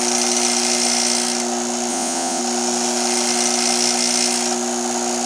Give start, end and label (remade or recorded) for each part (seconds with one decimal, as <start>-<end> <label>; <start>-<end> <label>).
0.0-1.9 recorded; 1.9-2.4 remade; 2.4-5.3 recorded